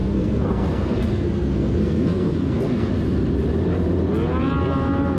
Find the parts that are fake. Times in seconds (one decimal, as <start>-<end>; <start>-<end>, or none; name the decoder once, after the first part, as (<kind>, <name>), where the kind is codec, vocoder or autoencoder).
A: 0.0-2.9 (codec, SNAC)